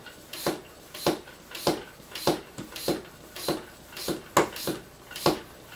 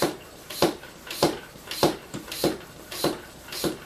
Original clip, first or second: first